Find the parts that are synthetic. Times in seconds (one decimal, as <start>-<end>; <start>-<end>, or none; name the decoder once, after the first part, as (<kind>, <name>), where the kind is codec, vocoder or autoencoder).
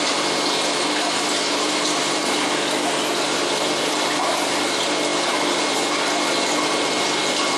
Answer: none